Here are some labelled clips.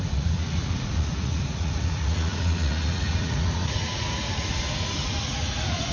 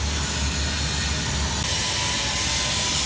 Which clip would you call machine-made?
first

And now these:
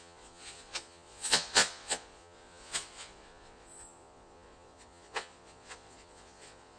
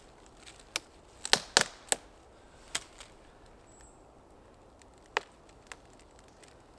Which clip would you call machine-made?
first